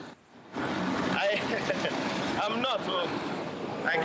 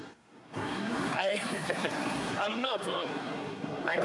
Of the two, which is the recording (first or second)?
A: first